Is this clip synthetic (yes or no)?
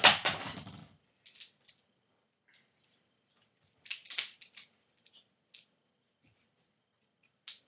no